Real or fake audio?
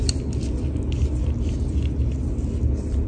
real